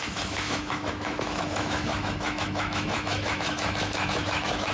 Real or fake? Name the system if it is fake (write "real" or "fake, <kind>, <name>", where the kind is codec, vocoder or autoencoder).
fake, autoencoder, DAC-VAE